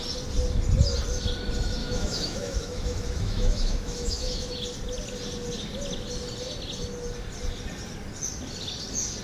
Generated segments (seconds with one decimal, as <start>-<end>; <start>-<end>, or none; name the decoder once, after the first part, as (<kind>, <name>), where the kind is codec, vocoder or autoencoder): 1.8-4.5 (autoencoder, DAC-VAE)